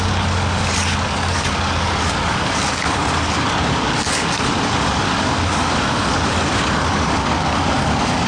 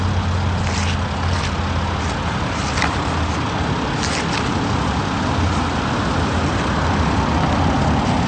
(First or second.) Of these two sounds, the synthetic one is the first